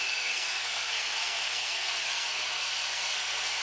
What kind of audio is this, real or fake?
fake